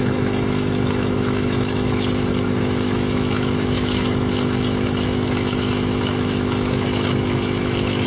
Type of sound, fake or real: fake